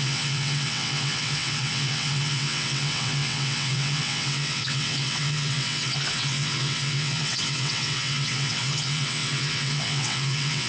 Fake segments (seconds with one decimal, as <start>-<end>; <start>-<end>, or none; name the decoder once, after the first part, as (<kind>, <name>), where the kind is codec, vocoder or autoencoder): 0.0-10.7 (vocoder, WaveNeXt)